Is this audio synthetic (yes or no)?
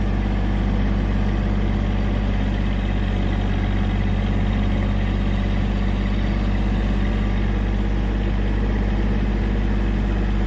no